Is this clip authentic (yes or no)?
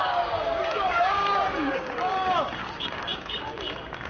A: no